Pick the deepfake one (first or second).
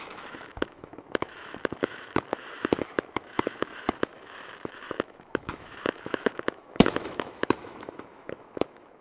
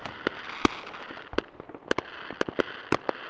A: first